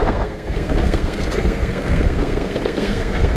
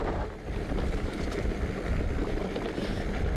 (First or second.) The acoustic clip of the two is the second